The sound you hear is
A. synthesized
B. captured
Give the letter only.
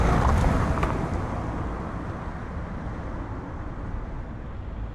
A